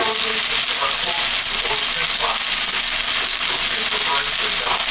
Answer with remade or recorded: recorded